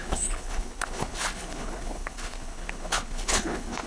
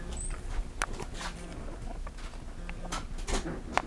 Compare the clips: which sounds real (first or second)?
second